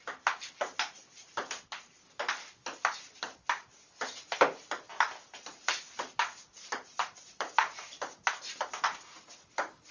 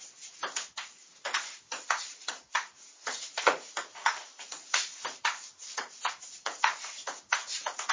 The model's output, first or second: second